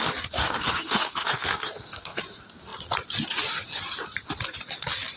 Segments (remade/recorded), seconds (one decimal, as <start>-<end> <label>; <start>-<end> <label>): 0.0-0.4 recorded; 0.4-2.2 remade; 2.2-5.2 recorded